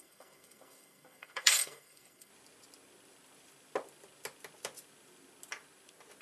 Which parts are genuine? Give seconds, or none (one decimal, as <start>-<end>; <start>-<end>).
2.3-6.2